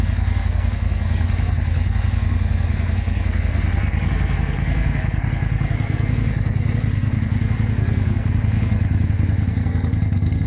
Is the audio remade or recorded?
remade